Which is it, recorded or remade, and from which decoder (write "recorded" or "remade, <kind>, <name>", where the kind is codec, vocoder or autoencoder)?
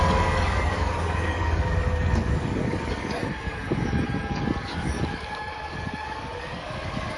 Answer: remade, codec, DAC